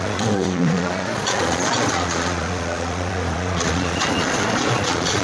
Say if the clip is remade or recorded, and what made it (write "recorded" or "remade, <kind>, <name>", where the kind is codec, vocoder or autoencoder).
remade, vocoder, Vocos